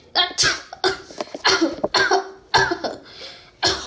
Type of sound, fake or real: real